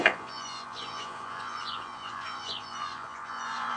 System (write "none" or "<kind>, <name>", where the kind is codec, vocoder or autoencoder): vocoder, Vocos